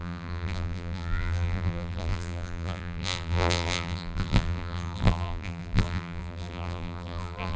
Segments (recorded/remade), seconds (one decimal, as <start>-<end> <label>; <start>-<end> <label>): 0.0-7.6 remade